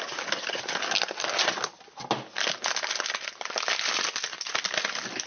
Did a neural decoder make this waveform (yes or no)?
no